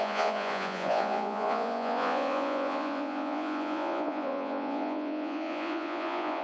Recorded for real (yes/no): no